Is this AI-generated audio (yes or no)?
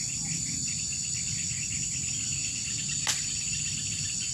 no